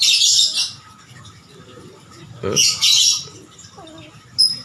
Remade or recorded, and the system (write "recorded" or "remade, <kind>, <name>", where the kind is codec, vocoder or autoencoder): recorded